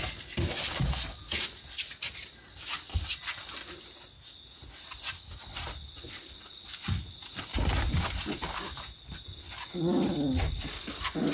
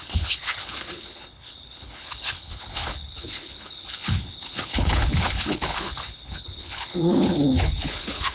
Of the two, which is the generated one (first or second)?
second